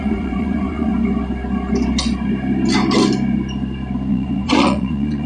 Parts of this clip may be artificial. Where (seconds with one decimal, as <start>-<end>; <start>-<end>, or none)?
0.0-0.9; 4.1-5.3